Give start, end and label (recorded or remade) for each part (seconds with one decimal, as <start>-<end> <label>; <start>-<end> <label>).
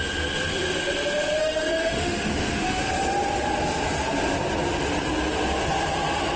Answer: 0.0-1.4 recorded; 1.4-2.8 remade; 2.8-6.4 recorded